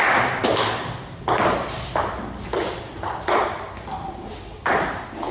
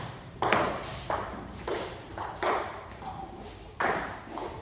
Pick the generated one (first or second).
second